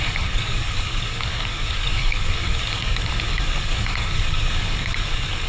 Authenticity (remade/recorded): remade